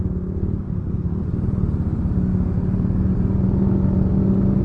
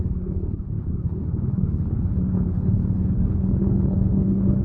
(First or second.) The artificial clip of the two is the second